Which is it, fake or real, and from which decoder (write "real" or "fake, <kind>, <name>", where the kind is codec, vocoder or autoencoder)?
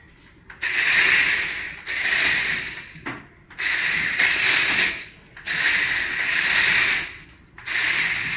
real